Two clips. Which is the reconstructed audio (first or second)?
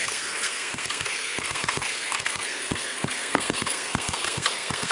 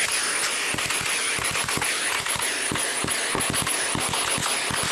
first